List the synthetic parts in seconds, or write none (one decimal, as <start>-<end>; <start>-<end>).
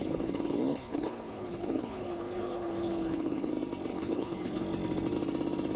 0.0-3.5; 3.9-4.6